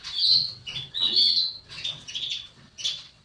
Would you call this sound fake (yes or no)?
yes